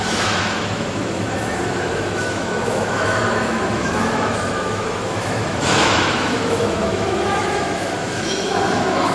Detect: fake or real fake